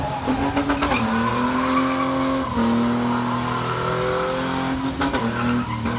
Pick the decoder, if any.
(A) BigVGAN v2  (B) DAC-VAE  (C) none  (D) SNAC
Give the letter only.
C